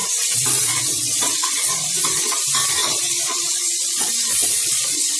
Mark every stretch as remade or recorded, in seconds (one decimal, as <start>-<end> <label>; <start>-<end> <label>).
0.0-2.4 remade; 2.4-2.8 recorded; 2.8-5.2 remade